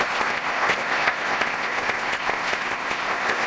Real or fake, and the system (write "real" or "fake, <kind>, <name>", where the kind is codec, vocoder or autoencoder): fake, codec, ZipCodec